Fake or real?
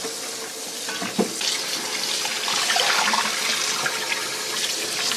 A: real